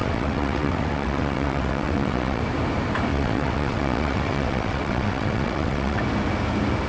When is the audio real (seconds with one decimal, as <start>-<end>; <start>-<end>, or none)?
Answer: 2.4-3.1; 6.0-6.9